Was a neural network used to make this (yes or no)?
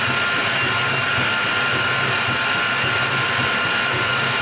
no